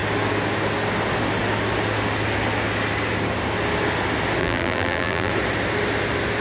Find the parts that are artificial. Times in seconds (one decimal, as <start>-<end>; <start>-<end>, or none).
4.4-5.3